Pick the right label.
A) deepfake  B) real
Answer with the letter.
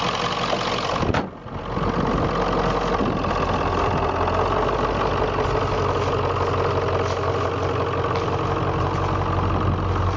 B